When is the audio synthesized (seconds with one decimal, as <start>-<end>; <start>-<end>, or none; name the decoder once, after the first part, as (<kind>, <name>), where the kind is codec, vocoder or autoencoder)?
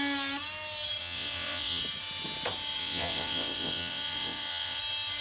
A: 1.0-1.8 (vocoder, WaveNeXt); 2.8-4.8